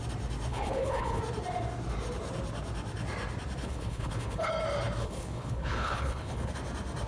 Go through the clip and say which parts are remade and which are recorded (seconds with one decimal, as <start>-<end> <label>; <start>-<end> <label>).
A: 0.0-0.5 recorded; 0.5-1.2 remade; 1.2-3.6 recorded; 3.6-4.5 remade; 4.5-5.0 recorded; 5.0-6.5 remade; 6.5-7.1 recorded